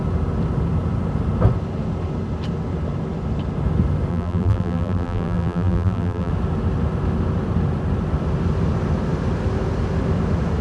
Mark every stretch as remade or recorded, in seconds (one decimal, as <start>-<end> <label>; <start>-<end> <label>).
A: 0.0-4.1 recorded; 4.1-6.3 remade; 6.3-10.6 recorded